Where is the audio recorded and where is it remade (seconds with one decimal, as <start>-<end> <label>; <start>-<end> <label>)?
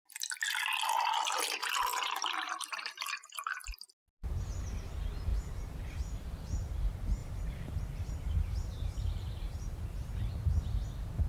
0.0-1.9 recorded; 1.9-3.5 remade; 3.5-5.3 recorded; 5.3-6.3 remade; 6.3-7.2 recorded; 7.2-10.3 remade; 10.3-11.3 recorded